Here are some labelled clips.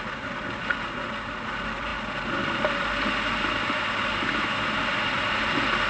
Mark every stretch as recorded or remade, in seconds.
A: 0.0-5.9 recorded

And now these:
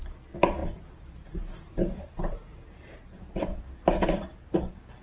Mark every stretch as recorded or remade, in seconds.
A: 0.0-0.6 recorded; 0.6-3.6 remade; 3.6-5.0 recorded

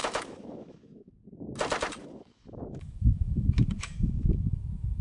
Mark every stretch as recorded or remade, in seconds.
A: 0.0-1.1 remade; 1.1-2.0 recorded; 2.0-5.0 remade